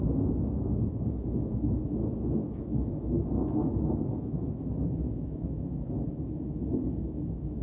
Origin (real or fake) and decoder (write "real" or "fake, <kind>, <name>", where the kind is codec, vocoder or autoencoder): fake, autoencoder, DAC-VAE